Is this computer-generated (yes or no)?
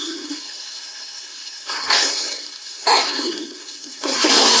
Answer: yes